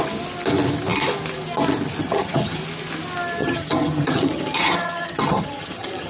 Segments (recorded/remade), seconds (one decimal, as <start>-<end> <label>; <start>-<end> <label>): 0.0-2.0 recorded; 2.0-2.6 remade; 2.6-3.4 recorded; 3.4-6.1 remade